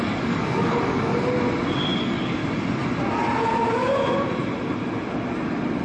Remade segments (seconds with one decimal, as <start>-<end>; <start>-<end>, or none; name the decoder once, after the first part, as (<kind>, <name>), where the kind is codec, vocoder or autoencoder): 0.0-1.1 (codec, DAC); 2.0-2.4